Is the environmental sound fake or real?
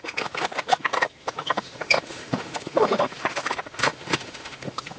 fake